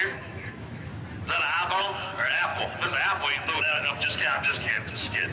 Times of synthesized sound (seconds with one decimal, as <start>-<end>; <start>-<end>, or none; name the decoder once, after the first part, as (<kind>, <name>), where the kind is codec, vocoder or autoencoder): 0.0-0.9 (autoencoder, DAC-VAE); 1.7-2.5; 3.6-5.3